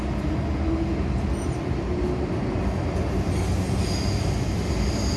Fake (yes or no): no